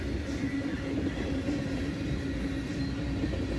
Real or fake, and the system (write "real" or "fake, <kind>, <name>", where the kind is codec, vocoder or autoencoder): real